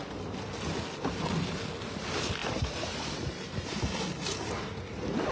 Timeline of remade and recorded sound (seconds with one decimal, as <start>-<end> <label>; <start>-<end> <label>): 0.0-2.4 recorded; 2.4-3.8 remade; 3.8-5.3 recorded